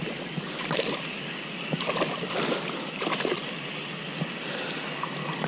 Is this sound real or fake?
real